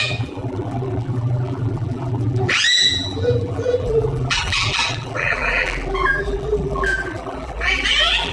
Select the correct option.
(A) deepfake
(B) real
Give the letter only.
A